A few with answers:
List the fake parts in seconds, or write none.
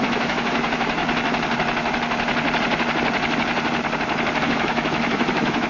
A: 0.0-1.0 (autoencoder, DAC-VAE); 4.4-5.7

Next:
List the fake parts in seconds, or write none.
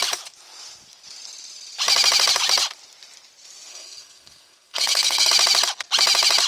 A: 3.7-5.3 (codec, SNAC)